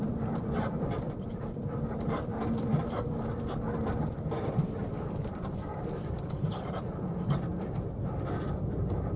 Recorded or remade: remade